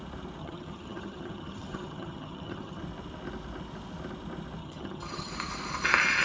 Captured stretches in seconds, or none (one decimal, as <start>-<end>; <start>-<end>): 0.0-0.4; 2.8-4.6; 5.3-6.2